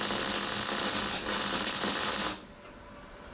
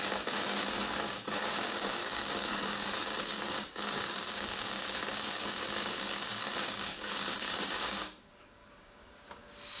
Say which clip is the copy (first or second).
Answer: second